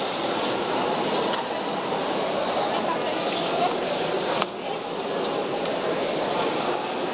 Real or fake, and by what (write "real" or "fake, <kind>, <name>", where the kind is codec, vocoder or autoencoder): real